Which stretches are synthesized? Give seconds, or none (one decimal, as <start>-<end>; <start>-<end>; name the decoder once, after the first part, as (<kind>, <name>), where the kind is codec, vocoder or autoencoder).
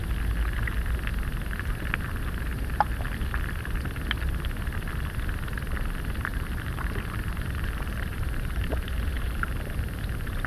6.3-10.5 (vocoder, BigVGAN v2)